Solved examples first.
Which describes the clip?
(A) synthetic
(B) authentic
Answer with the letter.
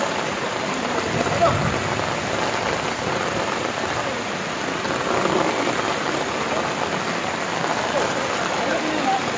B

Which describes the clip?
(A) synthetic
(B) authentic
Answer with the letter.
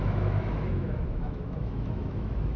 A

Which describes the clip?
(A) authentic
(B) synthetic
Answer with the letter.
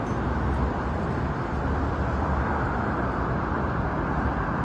A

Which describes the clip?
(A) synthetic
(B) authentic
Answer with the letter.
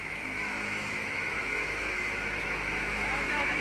A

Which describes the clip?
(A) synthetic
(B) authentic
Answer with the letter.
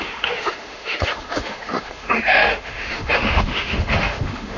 A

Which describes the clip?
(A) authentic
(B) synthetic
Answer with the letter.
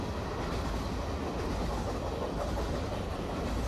A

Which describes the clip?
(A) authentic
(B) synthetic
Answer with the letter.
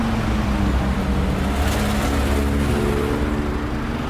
A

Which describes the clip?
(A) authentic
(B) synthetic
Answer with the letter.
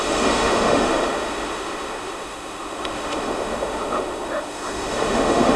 B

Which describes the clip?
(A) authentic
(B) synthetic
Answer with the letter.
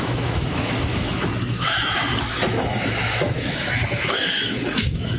B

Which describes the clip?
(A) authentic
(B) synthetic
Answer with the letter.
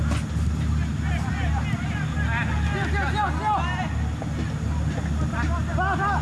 A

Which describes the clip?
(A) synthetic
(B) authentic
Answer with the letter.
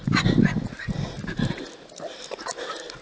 B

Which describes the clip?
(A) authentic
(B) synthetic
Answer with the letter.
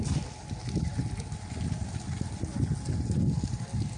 A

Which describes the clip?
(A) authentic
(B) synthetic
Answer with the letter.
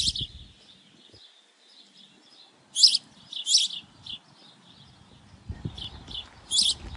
A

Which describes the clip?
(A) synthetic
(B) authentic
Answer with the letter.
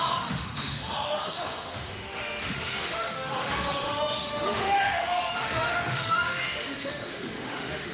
A